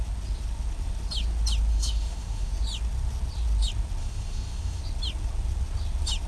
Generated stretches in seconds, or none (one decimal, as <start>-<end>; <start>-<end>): 1.7-2.5; 4.0-4.8